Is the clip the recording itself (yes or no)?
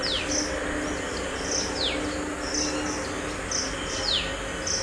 yes